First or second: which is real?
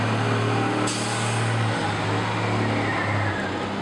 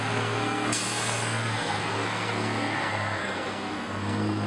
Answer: first